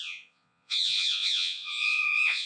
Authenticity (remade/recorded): remade